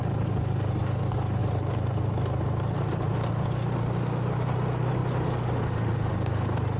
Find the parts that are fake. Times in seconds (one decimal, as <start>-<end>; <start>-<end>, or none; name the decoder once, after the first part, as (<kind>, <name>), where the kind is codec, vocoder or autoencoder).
1.4-3.3 (vocoder, BigVGAN v2)